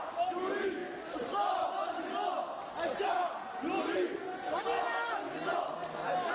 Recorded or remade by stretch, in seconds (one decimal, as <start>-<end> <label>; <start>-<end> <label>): 0.0-6.3 recorded